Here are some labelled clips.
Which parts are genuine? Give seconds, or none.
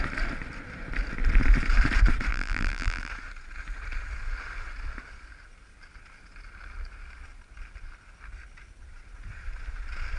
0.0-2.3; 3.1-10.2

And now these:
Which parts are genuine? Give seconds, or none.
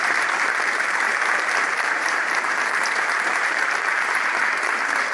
4.4-5.1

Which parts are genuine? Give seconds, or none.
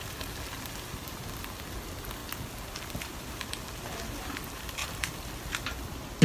0.0-4.8; 5.3-6.2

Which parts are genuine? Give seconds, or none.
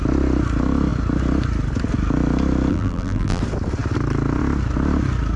0.0-2.7; 3.4-5.4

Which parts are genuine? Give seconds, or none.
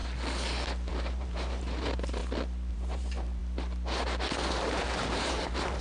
0.0-0.9; 2.2-2.7; 3.4-4.5